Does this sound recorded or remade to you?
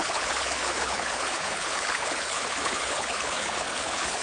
remade